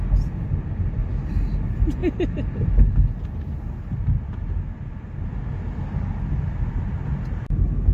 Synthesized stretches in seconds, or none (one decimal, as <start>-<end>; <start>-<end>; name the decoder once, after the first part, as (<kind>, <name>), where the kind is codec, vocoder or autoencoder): none